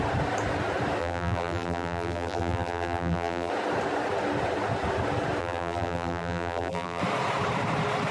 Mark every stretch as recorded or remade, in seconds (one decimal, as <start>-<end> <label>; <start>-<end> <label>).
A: 0.0-1.0 recorded; 1.0-3.5 remade; 3.5-5.4 recorded; 5.4-7.0 remade; 7.0-8.1 recorded